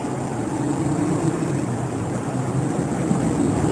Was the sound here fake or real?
real